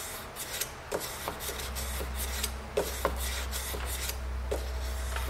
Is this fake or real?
real